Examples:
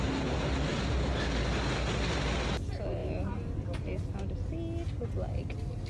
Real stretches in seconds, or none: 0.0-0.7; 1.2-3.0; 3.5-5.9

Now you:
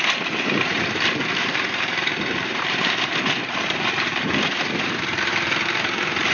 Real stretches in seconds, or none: 5.3-6.3

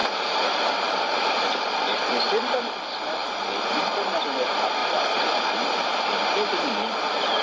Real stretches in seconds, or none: 4.2-4.8; 5.7-7.4

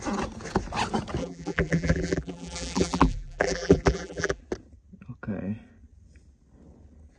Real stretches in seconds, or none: 0.0-1.2; 4.4-7.2

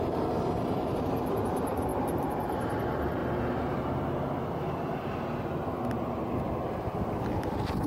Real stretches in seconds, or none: 3.2-7.9

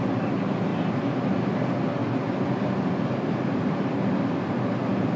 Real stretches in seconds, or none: 0.0-5.2

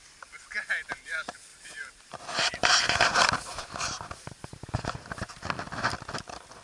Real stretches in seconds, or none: 0.0-1.5; 5.5-6.6

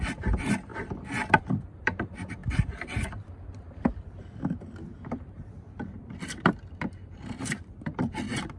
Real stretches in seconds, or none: none